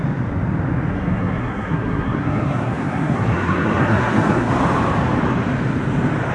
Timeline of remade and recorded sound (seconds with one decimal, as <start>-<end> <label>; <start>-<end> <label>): 0.0-0.9 recorded; 0.9-4.5 remade; 4.5-6.3 recorded